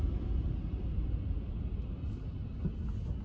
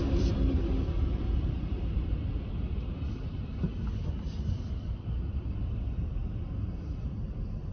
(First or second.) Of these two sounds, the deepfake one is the second